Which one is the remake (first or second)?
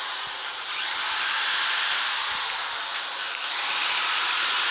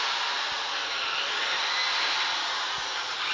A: first